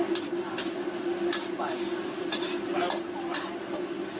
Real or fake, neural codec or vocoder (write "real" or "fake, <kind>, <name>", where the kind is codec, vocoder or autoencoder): real